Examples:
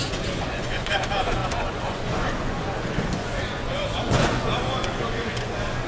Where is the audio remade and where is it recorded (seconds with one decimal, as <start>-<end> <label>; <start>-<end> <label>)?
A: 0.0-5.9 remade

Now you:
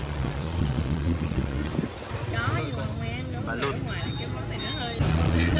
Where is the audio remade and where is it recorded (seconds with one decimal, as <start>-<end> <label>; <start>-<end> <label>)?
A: 0.0-1.7 remade; 1.7-5.1 recorded; 5.1-5.6 remade

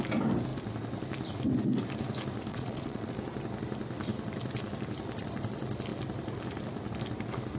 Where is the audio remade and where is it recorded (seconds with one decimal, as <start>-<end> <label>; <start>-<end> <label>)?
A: 0.0-2.5 recorded; 2.5-3.1 remade; 3.1-7.6 recorded